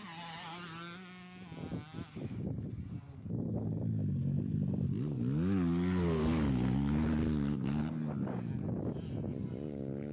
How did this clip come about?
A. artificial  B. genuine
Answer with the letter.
B